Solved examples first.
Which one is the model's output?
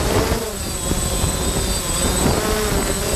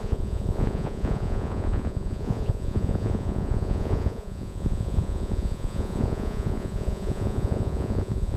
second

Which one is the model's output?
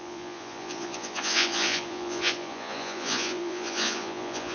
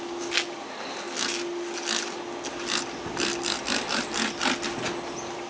first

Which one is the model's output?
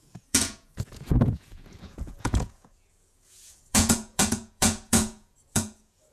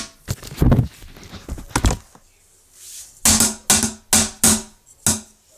first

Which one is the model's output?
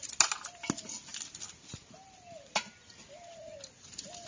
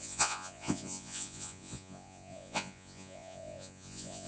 second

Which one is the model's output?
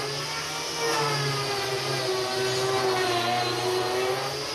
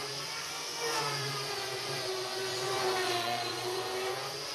second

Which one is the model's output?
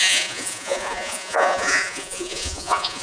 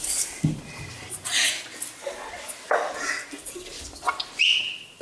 first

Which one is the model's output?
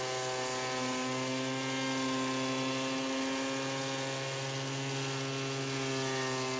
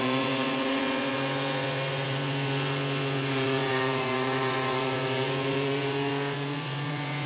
second